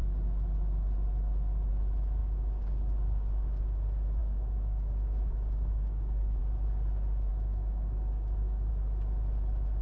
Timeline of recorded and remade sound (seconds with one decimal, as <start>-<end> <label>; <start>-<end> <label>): 0.0-2.2 recorded; 2.2-3.6 remade; 3.6-4.2 recorded; 4.2-6.4 remade; 6.4-7.3 recorded; 7.3-8.7 remade; 8.7-9.8 recorded